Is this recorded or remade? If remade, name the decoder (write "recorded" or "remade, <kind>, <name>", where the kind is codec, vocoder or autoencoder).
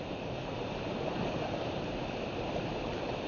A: recorded